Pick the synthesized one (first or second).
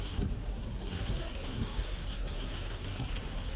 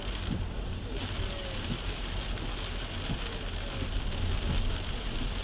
first